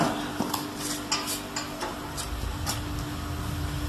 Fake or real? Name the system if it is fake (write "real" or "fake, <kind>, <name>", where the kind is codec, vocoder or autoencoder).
real